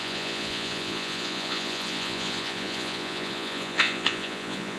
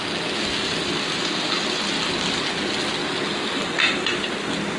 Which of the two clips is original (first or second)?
second